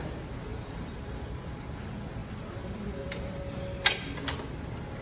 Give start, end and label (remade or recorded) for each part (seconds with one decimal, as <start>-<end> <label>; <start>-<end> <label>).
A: 0.0-0.5 recorded; 0.5-1.6 remade; 1.6-2.2 recorded; 2.2-3.4 remade; 3.4-5.0 recorded